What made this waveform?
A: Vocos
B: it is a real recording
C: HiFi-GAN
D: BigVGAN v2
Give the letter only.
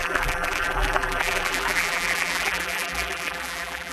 D